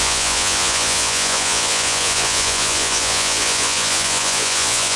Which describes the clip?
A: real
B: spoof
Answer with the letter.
B